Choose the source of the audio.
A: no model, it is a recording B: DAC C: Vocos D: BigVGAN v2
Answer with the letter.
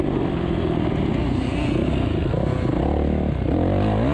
A